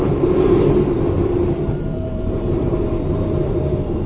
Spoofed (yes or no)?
yes